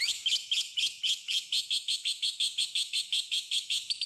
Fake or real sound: fake